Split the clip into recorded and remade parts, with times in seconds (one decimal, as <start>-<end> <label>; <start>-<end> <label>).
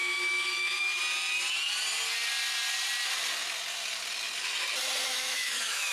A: 0.0-1.0 remade; 1.0-5.1 recorded; 5.1-5.9 remade